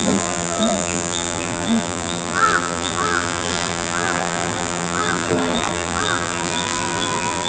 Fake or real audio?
fake